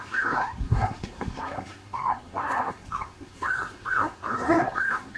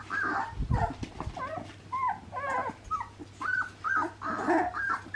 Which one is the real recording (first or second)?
second